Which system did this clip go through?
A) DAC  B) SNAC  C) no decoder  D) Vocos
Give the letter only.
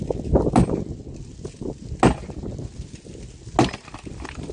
C